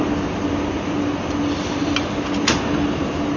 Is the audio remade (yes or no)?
no